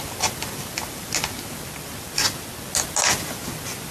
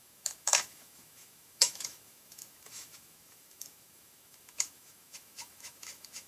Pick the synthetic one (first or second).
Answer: second